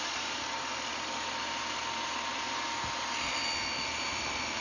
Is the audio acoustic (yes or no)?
yes